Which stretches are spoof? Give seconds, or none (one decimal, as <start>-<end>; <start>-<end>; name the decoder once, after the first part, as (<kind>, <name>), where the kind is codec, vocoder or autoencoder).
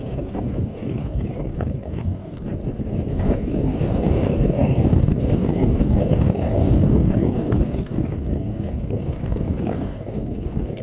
0.0-2.6 (codec, DAC); 3.1-10.8